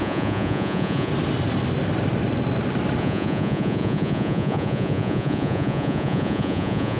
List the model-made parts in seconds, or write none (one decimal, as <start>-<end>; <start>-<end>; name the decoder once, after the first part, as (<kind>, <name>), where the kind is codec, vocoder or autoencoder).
0.0-1.1 (vocoder, Vocos); 3.0-7.0